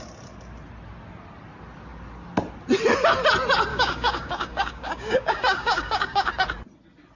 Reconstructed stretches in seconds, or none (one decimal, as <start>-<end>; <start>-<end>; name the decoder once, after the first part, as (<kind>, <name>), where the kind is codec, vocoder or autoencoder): 3.7-6.3 (codec, DAC)